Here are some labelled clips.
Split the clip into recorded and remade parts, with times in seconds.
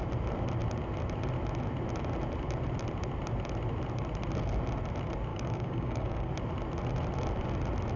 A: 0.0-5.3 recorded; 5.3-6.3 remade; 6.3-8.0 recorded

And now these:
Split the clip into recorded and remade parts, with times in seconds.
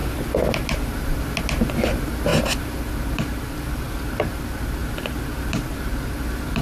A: 0.0-6.6 recorded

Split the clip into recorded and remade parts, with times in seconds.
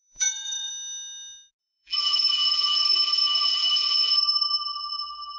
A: 0.0-0.7 remade; 0.7-1.6 recorded; 1.6-5.4 remade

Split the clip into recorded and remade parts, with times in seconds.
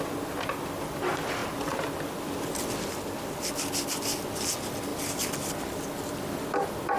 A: 0.0-7.0 recorded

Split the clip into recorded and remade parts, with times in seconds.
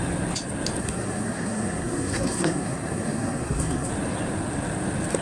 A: 0.0-0.8 recorded; 0.8-3.9 remade; 3.9-5.2 recorded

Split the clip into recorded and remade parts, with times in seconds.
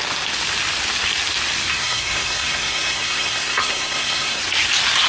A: 0.0-1.7 recorded; 1.7-4.4 remade; 4.4-5.1 recorded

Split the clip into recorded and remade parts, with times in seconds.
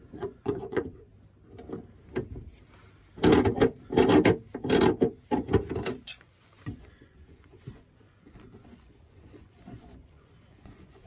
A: 0.0-1.1 remade; 1.1-5.9 recorded; 5.9-11.1 remade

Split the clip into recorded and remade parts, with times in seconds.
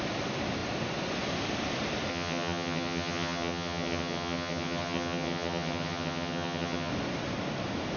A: 0.0-2.1 recorded; 2.1-6.9 remade; 6.9-8.0 recorded